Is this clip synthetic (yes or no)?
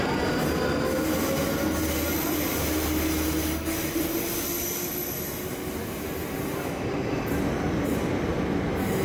no